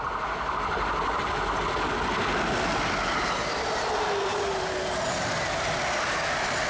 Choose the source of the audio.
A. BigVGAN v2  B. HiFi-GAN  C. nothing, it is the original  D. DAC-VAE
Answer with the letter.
C